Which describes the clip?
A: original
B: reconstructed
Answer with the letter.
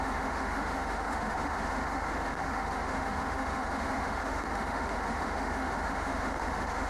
B